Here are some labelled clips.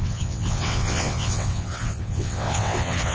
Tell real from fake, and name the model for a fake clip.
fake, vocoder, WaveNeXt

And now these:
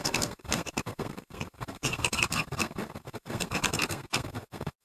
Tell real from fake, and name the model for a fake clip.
fake, codec, SNAC